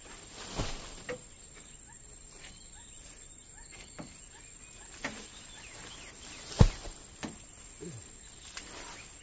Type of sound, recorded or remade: recorded